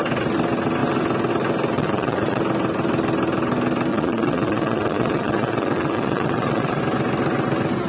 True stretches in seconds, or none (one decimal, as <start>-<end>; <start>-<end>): 0.0-1.8; 2.4-3.9; 6.8-7.9